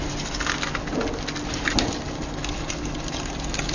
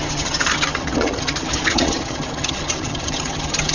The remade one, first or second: second